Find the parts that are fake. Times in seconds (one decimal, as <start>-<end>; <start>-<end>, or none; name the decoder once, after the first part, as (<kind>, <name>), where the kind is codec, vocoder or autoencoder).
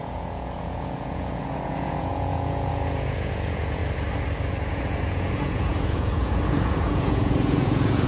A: 0.0-3.8 (vocoder, Vocos); 4.7-8.1